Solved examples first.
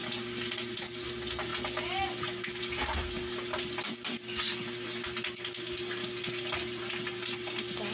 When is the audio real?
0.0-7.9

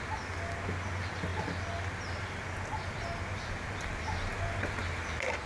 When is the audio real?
0.0-5.5